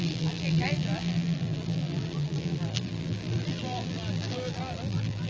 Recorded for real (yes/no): no